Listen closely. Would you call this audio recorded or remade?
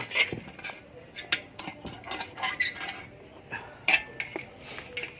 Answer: recorded